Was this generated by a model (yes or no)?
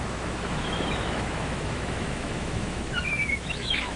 yes